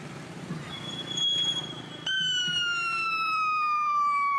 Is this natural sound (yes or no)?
no